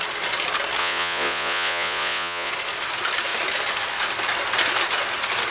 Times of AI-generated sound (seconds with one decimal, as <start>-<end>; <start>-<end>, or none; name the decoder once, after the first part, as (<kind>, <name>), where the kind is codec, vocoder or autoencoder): 0.8-2.5 (vocoder, Vocos)